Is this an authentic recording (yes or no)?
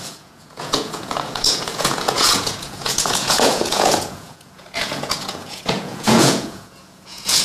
no